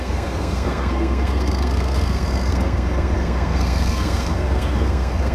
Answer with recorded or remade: remade